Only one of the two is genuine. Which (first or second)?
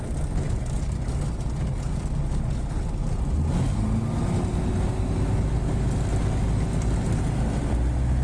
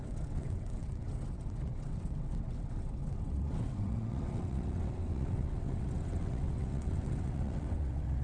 first